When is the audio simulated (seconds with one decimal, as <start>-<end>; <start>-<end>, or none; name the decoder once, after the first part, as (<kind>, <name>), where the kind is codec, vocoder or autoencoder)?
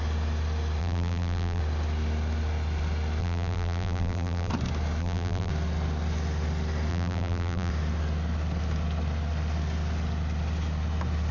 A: 0.8-1.6 (vocoder, BigVGAN v2); 3.2-4.5; 5.0-5.5; 6.9-7.7